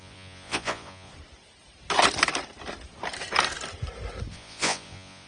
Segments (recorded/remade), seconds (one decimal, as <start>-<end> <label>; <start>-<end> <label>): 0.0-1.1 remade; 1.1-4.3 recorded; 4.3-5.3 remade